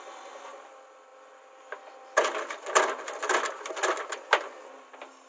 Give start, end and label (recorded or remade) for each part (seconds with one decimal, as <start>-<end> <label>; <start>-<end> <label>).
0.0-5.3 recorded